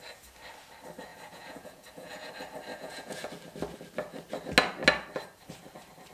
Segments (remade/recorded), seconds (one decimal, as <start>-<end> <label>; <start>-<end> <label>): 0.0-1.1 recorded; 1.1-2.3 remade; 2.3-2.7 recorded; 2.7-3.3 remade; 3.3-6.1 recorded